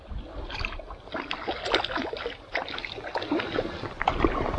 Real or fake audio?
real